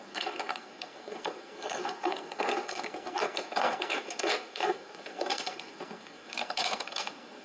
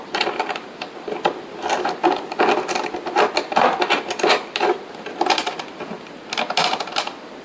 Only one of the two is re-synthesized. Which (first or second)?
first